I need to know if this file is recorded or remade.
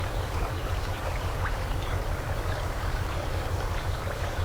remade